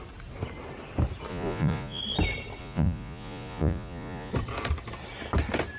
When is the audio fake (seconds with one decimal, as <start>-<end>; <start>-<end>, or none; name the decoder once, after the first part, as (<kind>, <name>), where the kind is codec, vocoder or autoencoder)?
1.3-2.0 (vocoder, Vocos); 2.6-4.3